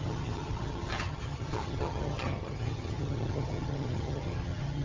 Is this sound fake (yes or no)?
yes